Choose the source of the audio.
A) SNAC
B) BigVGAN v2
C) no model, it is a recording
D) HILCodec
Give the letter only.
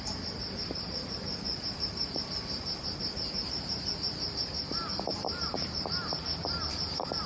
B